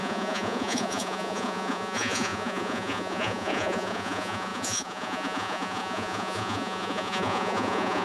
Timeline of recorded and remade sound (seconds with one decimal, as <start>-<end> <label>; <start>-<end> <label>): 0.0-8.0 remade